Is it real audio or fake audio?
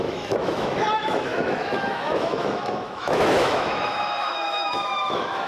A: fake